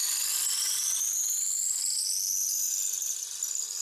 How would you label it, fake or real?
real